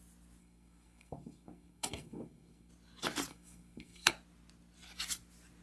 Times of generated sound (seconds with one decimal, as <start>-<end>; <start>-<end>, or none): 0.4-2.7; 3.3-4.1

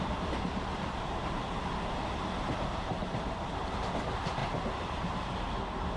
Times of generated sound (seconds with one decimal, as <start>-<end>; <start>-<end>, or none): none

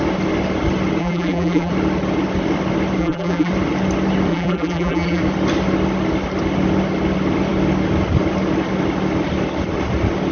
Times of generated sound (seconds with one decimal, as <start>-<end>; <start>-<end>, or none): 1.0-1.7; 3.0-3.5; 4.3-5.2